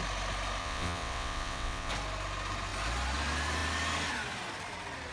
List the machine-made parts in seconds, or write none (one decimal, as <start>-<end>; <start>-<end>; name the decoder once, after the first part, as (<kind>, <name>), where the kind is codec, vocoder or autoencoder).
0.6-1.9 (vocoder, WaveNeXt)